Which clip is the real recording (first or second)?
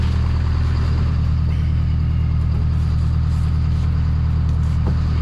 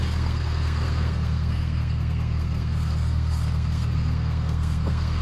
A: first